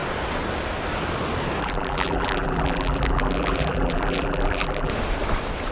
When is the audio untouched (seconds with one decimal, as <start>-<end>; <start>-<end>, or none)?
0.0-1.6; 4.9-5.7